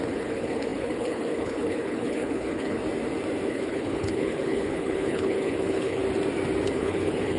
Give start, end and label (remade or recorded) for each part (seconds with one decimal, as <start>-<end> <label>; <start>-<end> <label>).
0.0-2.8 remade; 2.8-3.5 recorded; 3.5-6.0 remade; 6.0-6.7 recorded; 6.7-7.4 remade